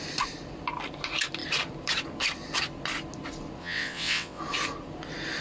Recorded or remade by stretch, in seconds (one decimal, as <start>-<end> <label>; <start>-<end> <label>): 0.0-3.6 recorded; 3.6-4.4 remade; 4.4-5.4 recorded